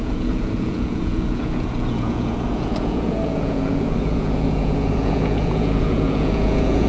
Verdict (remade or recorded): remade